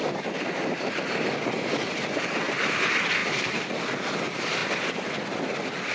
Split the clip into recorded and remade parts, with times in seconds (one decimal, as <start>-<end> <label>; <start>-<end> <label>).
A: 0.0-1.0 remade; 1.0-3.2 recorded; 3.2-3.7 remade; 3.7-4.6 recorded; 4.6-5.1 remade; 5.1-5.9 recorded